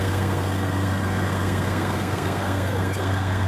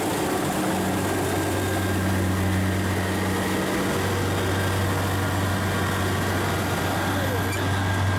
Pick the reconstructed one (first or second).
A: first